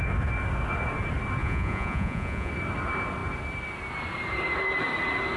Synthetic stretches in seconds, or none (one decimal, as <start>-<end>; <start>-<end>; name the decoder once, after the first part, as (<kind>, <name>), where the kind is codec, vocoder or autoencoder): 1.4-2.5 (vocoder, Vocos)